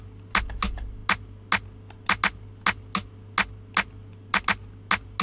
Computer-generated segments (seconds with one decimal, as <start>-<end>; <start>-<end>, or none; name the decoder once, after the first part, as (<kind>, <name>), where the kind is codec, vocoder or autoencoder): none